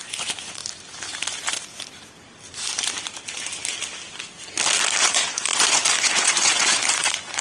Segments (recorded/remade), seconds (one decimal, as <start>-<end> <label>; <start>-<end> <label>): 0.0-0.6 remade; 0.6-5.0 recorded; 5.0-7.4 remade